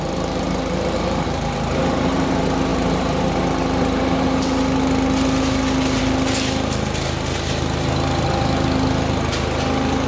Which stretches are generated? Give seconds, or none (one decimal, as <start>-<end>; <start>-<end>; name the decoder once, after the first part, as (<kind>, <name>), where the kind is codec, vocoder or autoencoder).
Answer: none